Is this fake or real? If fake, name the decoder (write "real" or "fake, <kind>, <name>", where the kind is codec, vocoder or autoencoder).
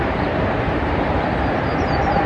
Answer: fake, vocoder, BigVGAN v2